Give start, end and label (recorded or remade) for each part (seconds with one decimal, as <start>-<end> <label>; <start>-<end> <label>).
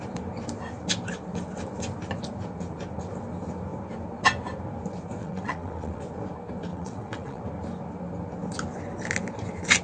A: 0.0-5.2 recorded; 5.2-6.0 remade; 6.0-6.7 recorded; 6.7-7.4 remade; 7.4-9.8 recorded